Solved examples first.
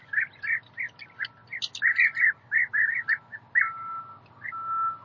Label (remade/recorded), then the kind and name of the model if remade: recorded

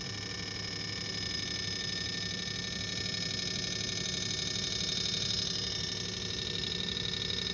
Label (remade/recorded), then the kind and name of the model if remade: recorded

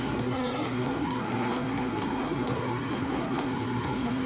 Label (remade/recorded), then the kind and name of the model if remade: remade, codec, SNAC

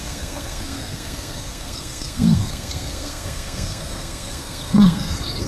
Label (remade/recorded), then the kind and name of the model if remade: remade, codec, SNAC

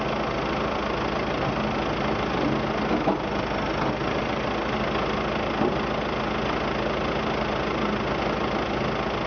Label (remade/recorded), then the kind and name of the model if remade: recorded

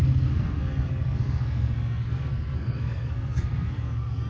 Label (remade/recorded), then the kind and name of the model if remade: remade, codec, SNAC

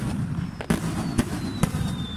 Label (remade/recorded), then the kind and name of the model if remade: recorded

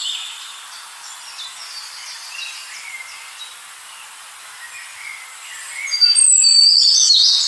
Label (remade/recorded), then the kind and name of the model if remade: recorded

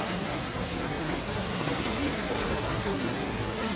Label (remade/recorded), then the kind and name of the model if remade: remade, codec, SNAC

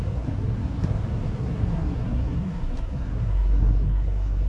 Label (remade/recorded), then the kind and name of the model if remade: remade, codec, SNAC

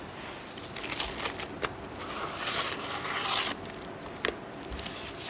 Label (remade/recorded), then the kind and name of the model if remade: recorded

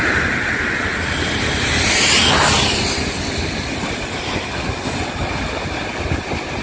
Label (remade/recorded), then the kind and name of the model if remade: recorded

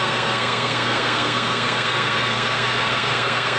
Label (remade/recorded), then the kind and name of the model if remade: remade, codec, SNAC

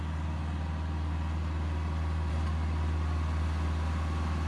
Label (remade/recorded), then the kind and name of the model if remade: recorded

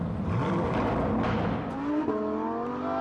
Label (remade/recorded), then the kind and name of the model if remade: recorded